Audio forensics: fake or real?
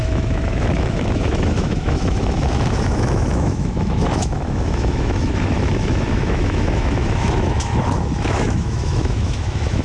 fake